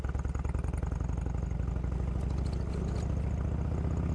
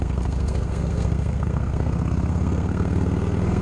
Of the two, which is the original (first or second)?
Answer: first